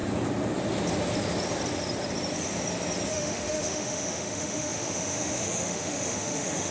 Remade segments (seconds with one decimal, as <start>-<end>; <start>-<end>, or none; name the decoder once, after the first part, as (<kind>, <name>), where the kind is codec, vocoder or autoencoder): 3.1-6.7 (autoencoder, DAC-VAE)